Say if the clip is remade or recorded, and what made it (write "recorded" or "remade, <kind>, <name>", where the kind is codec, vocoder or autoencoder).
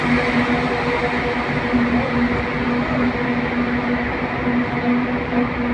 recorded